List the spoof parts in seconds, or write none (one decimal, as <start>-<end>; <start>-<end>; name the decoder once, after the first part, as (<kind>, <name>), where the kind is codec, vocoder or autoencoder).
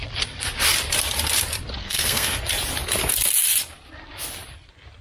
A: 1.8-2.4 (codec, SNAC)